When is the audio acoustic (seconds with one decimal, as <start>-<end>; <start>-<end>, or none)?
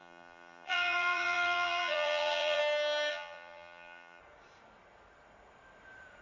2.6-3.1; 4.2-6.2